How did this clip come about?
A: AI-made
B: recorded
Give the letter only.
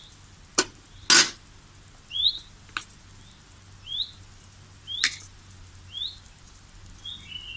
B